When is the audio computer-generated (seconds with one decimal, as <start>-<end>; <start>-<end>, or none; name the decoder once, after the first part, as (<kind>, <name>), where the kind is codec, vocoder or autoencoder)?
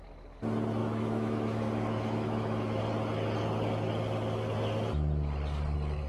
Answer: 0.8-2.8 (autoencoder, DAC-VAE)